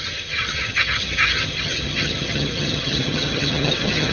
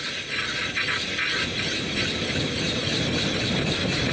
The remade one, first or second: first